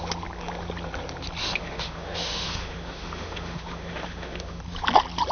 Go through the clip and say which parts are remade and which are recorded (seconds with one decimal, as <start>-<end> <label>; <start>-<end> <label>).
0.0-1.4 recorded; 1.4-4.6 remade; 4.6-5.3 recorded